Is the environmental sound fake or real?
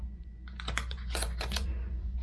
fake